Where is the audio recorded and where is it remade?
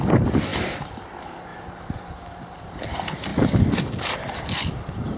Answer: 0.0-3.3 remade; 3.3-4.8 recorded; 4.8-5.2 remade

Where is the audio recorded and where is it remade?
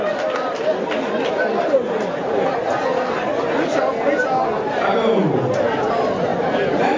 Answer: 0.0-2.8 recorded; 2.8-4.2 remade; 4.2-6.3 recorded; 6.3-7.0 remade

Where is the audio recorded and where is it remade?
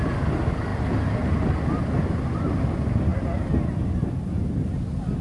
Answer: 0.0-5.2 recorded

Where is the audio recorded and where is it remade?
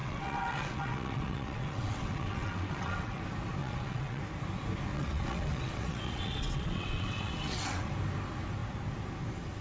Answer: 0.0-3.2 remade; 3.2-3.6 recorded; 3.6-4.2 remade; 4.2-4.9 recorded; 4.9-7.9 remade; 7.9-9.6 recorded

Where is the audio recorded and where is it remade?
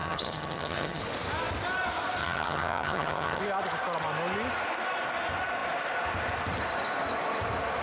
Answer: 0.0-1.0 remade; 1.0-2.2 recorded; 2.2-3.4 remade; 3.4-7.8 recorded